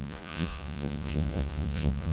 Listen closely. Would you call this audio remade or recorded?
remade